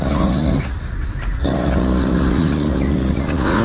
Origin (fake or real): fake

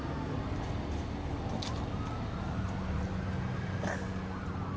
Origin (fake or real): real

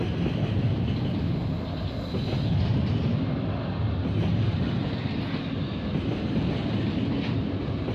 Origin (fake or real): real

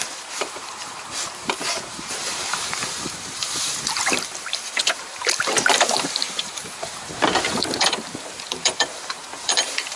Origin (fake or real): fake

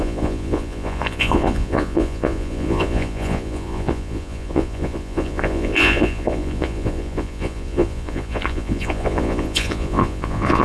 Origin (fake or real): fake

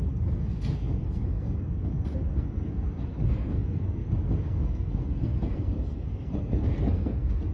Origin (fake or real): fake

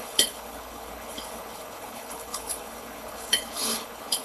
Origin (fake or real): fake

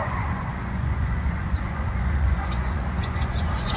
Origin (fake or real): fake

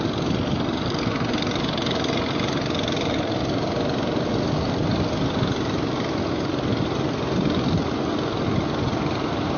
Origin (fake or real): real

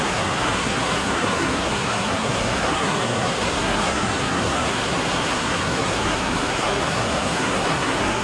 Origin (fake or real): fake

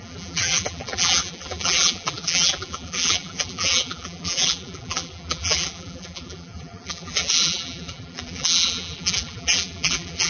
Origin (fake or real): fake